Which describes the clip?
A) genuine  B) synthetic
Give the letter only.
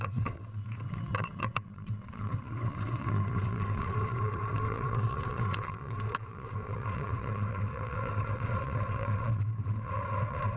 B